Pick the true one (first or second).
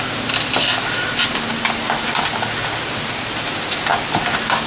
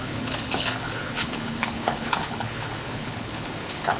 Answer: first